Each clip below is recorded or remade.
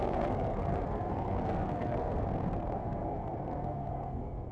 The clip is remade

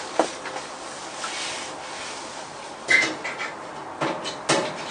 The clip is recorded